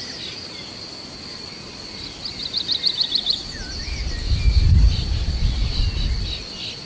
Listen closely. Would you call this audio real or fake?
real